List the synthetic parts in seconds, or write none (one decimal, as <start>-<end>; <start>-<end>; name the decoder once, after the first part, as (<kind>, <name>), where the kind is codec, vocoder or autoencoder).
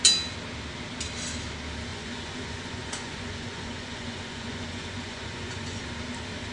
1.9-5.8 (vocoder, Vocos)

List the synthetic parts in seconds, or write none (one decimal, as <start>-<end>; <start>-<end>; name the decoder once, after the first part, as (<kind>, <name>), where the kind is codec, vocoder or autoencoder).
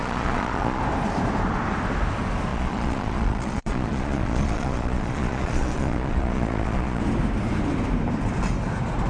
0.0-0.8 (vocoder, Vocos); 2.5-7.0